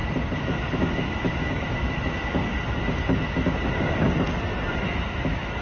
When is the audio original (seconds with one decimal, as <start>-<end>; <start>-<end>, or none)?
0.0-0.7; 2.4-4.8